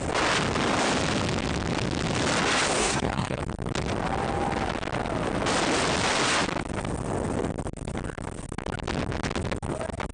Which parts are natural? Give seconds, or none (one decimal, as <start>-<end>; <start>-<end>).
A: 0.0-2.8; 3.4-10.1